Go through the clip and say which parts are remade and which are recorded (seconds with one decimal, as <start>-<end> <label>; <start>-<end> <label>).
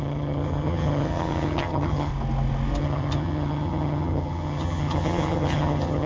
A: 0.0-2.1 remade; 2.1-2.8 recorded; 2.8-6.1 remade